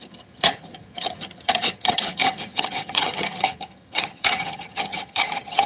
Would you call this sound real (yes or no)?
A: no